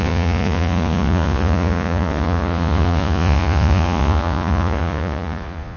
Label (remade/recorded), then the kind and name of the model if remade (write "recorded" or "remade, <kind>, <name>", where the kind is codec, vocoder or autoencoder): remade, vocoder, Vocos